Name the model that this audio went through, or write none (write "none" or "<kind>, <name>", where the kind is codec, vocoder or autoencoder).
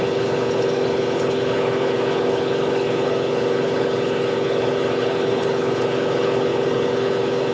codec, HILCodec